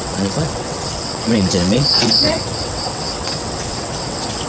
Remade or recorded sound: remade